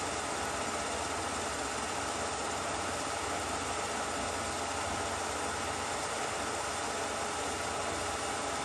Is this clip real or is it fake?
real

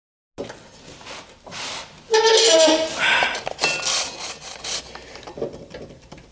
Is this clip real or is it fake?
real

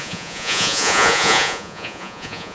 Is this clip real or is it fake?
fake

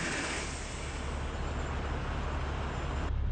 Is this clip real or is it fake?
real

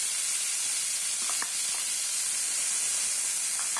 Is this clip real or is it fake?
real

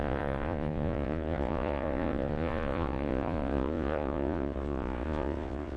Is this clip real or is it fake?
fake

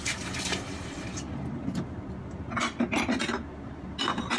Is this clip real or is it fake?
real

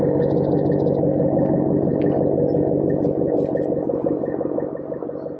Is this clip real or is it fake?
real